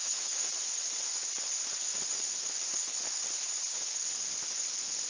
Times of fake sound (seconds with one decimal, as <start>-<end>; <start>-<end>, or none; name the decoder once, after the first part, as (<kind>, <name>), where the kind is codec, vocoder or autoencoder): 0.0-0.5 (autoencoder, DAC-VAE)